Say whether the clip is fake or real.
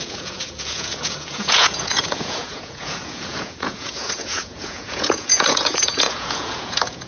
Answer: fake